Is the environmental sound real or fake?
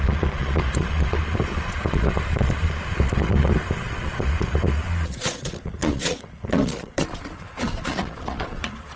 fake